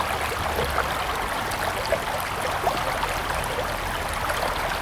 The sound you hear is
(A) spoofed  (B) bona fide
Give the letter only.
B